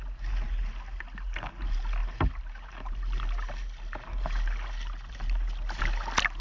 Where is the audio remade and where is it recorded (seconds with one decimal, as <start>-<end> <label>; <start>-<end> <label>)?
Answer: 0.0-6.4 recorded